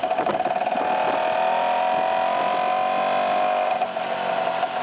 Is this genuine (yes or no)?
yes